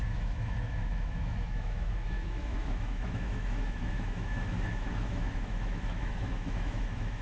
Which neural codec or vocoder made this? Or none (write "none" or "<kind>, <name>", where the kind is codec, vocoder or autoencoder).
autoencoder, DAC-VAE